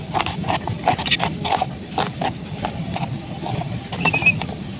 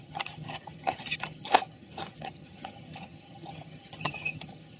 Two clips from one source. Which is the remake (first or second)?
second